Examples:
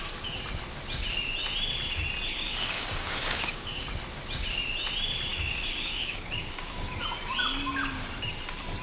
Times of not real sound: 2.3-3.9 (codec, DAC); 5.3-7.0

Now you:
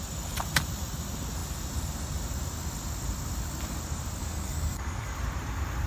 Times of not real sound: 4.2-5.2 (codec, DAC)

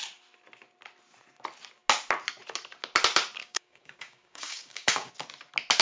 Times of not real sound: 3.4-5.1 (codec, DAC)

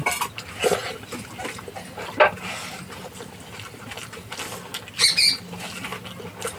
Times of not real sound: none

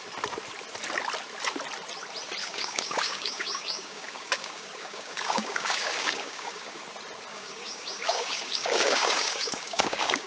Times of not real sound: 2.4-6.8 (codec, DAC); 7.3-10.3